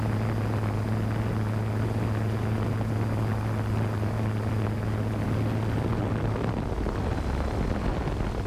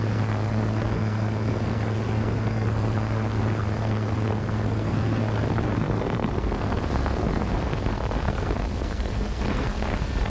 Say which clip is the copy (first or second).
second